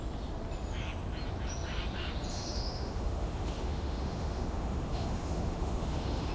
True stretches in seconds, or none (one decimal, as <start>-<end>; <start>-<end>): 0.0-2.3